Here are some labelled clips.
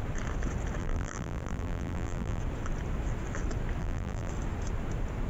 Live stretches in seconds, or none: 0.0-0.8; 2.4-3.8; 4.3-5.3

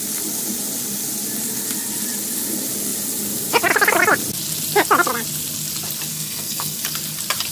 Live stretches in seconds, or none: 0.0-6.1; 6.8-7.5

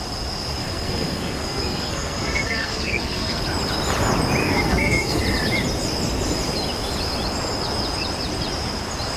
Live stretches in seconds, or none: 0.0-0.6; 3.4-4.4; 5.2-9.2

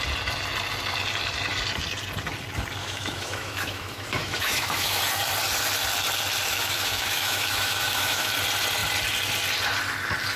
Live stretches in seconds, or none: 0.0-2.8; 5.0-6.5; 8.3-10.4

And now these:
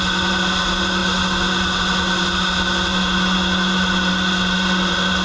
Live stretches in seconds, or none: 0.0-5.2

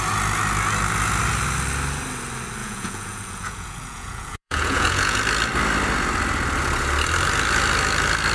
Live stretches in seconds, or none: 0.0-2.6; 5.2-8.3

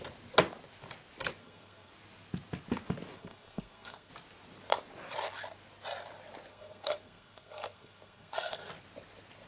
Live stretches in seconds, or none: 0.0-1.4; 1.9-3.2; 4.1-6.5; 8.7-9.5